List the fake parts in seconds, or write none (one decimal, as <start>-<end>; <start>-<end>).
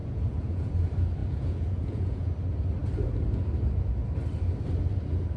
0.0-0.7; 1.2-2.3